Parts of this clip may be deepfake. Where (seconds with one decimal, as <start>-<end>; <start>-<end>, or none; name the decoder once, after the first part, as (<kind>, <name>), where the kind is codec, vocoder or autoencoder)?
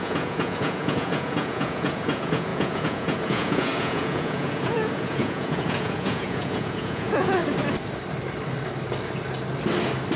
0.0-7.4 (vocoder, Vocos)